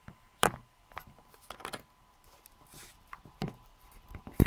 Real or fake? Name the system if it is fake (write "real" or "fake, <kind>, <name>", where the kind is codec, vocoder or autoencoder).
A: real